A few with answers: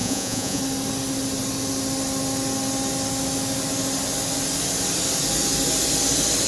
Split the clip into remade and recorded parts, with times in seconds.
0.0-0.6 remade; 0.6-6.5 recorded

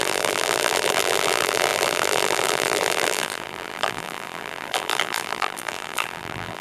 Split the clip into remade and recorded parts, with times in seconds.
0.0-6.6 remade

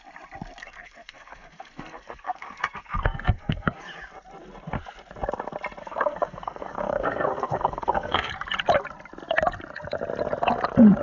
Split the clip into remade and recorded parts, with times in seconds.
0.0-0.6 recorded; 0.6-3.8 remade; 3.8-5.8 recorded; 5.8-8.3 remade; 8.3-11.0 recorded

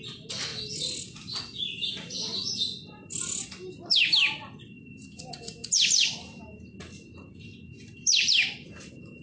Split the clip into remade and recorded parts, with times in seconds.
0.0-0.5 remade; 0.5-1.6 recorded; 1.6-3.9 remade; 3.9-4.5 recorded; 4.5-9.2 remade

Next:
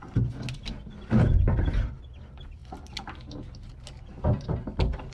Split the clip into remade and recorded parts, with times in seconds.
0.0-5.1 recorded